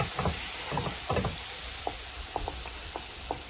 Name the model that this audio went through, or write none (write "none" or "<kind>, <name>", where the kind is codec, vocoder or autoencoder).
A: none